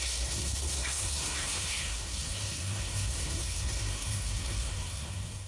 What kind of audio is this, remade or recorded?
remade